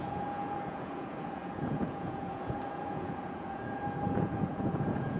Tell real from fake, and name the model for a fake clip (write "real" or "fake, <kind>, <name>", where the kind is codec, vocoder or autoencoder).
fake, vocoder, Vocos